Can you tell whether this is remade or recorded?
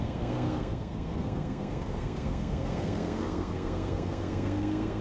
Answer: remade